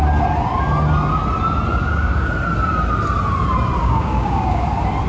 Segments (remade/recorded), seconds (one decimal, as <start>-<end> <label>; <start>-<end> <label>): 0.0-1.7 recorded; 1.7-2.3 remade; 2.3-3.8 recorded; 3.8-4.6 remade; 4.6-5.1 recorded